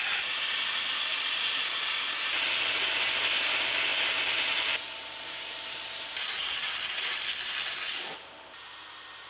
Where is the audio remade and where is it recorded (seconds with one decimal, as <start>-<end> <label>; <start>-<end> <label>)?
0.0-9.3 recorded